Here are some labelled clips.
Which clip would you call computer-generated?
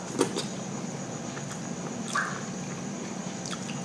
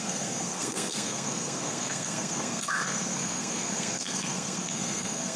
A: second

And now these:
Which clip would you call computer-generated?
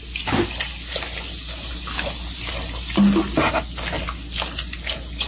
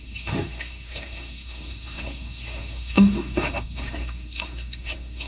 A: second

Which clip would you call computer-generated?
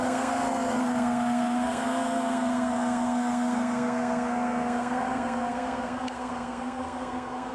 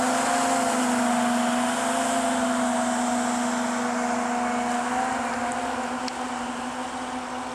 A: first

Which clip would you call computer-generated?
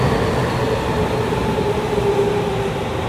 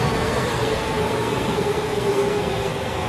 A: second